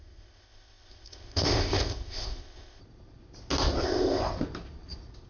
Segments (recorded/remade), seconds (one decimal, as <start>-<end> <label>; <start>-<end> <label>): 0.0-2.8 remade; 2.8-3.8 recorded; 3.8-4.2 remade; 4.2-5.3 recorded